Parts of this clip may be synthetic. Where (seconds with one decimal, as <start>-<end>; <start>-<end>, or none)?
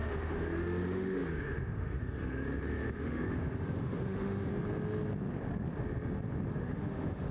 0.0-4.5; 6.5-7.3